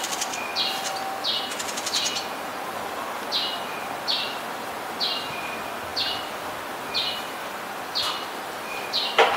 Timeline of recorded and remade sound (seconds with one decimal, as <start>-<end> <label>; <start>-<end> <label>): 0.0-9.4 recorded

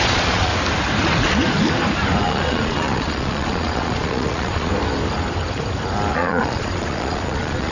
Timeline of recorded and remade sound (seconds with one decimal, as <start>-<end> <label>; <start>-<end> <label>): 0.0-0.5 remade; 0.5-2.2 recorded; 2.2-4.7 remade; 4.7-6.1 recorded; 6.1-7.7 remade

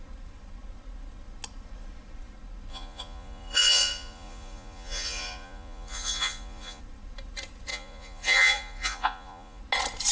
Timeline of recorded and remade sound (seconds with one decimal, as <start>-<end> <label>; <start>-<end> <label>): 0.0-2.7 recorded; 2.7-6.8 remade; 6.8-7.7 recorded; 7.7-9.6 remade; 9.6-10.1 recorded

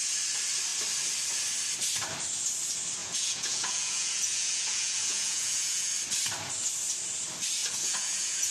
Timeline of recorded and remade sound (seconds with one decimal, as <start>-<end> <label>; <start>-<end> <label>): 0.0-3.0 recorded; 3.0-5.9 remade; 5.9-7.6 recorded; 7.6-8.5 remade